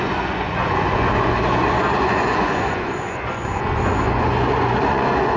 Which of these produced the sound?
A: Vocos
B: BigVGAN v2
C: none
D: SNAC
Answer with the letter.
A